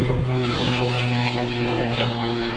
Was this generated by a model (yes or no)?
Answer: yes